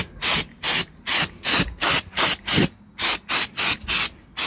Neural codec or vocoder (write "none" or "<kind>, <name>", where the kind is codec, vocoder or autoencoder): none